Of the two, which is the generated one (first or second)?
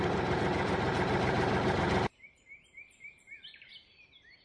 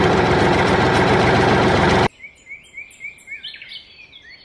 first